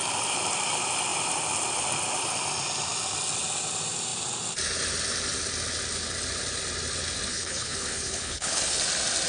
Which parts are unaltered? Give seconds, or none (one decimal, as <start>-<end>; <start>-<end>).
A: 0.0-7.3; 8.8-9.3